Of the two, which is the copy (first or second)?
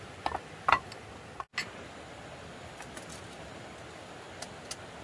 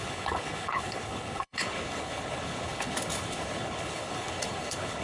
second